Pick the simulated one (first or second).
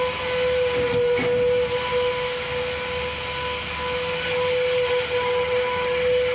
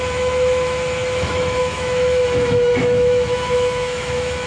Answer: second